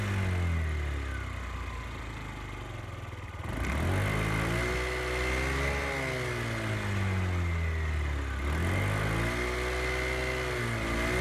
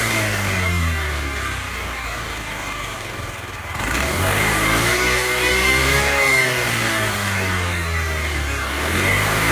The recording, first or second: first